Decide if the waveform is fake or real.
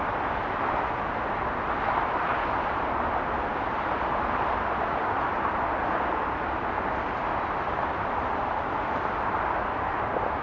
real